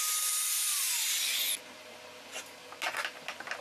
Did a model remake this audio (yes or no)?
no